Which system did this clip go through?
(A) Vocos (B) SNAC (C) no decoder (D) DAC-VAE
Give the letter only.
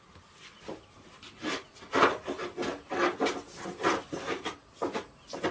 C